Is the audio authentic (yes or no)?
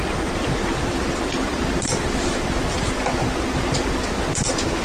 no